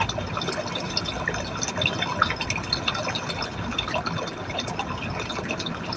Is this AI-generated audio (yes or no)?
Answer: no